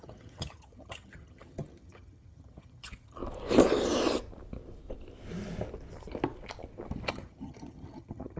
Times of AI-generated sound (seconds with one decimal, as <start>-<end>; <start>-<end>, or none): 0.0-3.2; 7.1-8.4